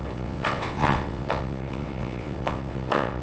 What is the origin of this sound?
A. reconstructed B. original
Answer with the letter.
A